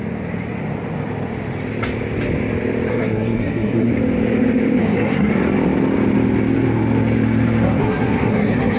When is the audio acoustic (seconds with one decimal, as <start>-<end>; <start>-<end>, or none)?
0.0-2.9; 3.9-4.8; 5.3-7.8